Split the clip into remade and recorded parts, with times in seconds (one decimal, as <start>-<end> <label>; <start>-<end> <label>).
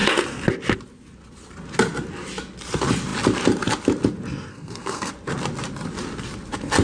0.0-4.5 recorded; 4.5-5.1 remade; 5.1-6.8 recorded